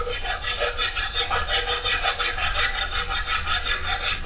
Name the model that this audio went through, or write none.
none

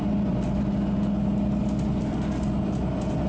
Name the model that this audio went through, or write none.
none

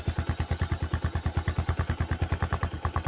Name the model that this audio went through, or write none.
none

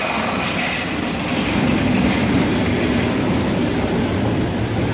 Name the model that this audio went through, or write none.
none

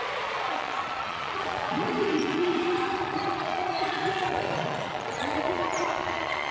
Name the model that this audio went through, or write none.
vocoder, Vocos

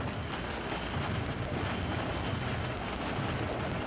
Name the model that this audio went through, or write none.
none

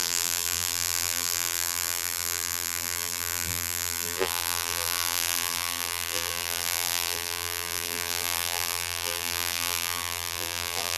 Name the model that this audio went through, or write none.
vocoder, BigVGAN v2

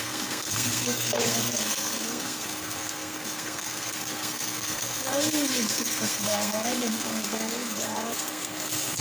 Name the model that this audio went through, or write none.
codec, SNAC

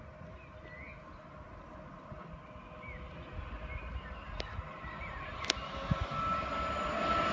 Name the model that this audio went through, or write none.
none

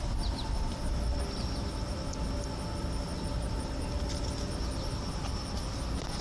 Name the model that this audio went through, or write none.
none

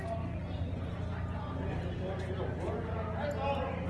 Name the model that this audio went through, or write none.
none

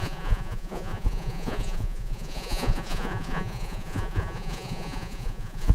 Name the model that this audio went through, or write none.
vocoder, Vocos